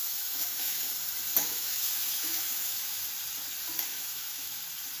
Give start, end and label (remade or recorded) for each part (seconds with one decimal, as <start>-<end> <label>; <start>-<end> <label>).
0.0-0.9 remade; 0.9-1.3 recorded; 1.3-3.0 remade; 3.0-3.9 recorded; 3.9-4.6 remade; 4.6-5.0 recorded